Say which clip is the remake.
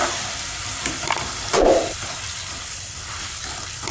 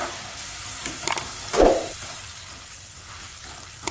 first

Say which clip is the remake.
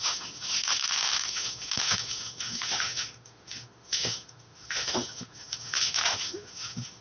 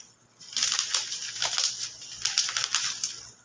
first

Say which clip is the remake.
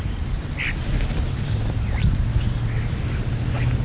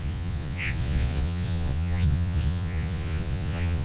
second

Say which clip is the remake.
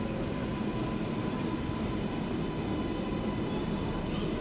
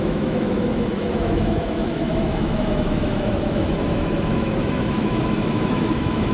second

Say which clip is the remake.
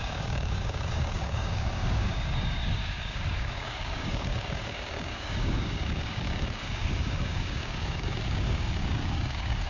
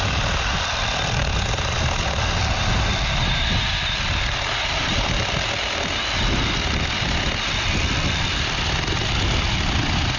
first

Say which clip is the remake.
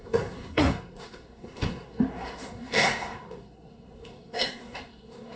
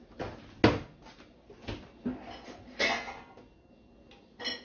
first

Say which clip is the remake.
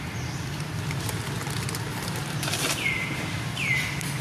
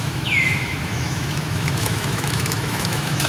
second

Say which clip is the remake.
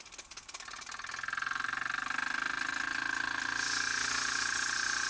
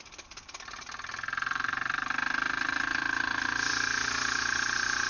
second